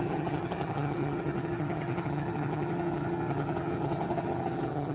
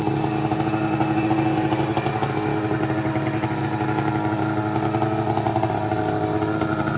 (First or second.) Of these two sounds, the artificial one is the first